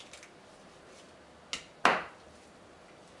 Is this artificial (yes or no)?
no